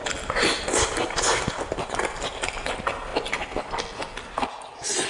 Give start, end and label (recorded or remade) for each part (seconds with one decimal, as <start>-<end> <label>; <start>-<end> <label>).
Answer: 0.0-5.1 recorded